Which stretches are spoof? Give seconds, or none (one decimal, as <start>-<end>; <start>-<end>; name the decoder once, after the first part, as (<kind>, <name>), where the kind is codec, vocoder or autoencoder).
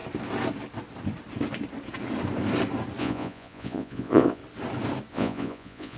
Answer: 3.0-4.4 (vocoder, Vocos); 5.1-6.0